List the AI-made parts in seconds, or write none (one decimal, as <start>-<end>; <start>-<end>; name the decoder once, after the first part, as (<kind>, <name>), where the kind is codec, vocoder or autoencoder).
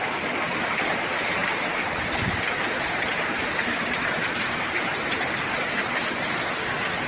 3.1-6.0 (vocoder, BigVGAN v2)